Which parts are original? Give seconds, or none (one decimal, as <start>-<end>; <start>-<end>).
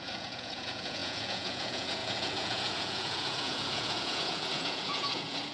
none